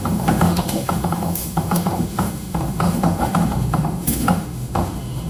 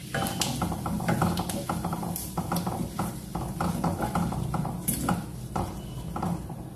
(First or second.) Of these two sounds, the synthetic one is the first